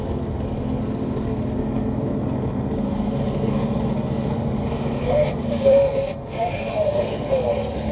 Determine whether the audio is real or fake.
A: fake